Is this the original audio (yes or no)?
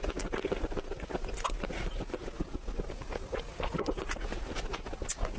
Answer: yes